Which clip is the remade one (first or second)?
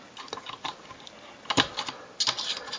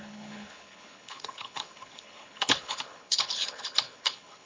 second